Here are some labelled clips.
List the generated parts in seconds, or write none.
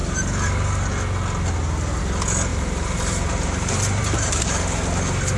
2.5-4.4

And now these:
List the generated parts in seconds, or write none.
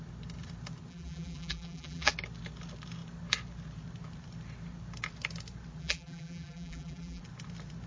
0.9-2.1; 5.8-7.2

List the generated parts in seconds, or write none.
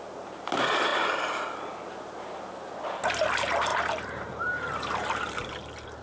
0.9-1.4; 3.7-5.5